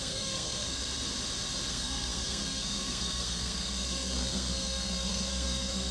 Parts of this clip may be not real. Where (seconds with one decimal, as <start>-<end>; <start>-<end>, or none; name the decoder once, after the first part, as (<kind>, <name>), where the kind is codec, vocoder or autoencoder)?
0.0-0.8 (codec, SNAC); 1.7-5.9